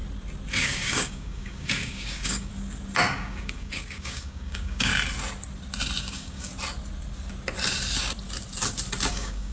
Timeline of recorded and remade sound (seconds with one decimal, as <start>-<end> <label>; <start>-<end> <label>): 0.0-0.5 recorded; 0.5-2.5 remade; 2.5-3.1 recorded; 3.1-4.9 remade; 4.9-6.0 recorded; 6.0-6.5 remade; 6.5-9.1 recorded; 9.1-9.5 remade